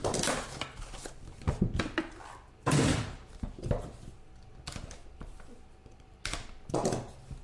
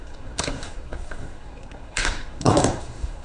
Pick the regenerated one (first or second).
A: second